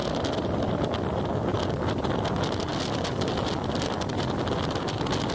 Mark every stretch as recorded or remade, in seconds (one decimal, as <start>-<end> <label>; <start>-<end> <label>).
0.0-5.3 recorded